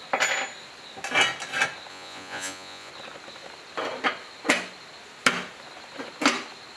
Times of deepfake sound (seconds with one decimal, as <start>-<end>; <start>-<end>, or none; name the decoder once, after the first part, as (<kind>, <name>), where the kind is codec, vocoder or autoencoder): 1.9-2.9 (vocoder, Vocos)